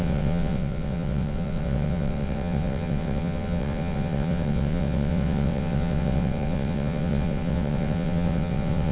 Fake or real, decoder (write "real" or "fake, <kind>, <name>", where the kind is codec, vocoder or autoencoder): fake, vocoder, WaveNeXt